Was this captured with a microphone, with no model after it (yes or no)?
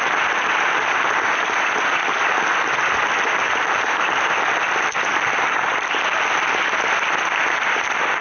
yes